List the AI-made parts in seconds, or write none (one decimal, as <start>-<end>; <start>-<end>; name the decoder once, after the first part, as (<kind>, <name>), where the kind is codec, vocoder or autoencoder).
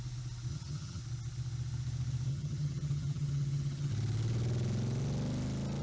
0.5-1.0 (vocoder, HiFi-GAN); 2.3-3.9